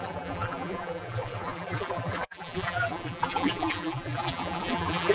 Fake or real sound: fake